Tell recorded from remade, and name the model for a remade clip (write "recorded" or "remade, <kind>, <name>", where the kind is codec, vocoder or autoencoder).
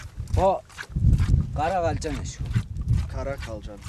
recorded